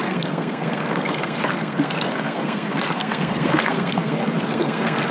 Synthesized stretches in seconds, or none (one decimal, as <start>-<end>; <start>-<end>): 0.0-5.1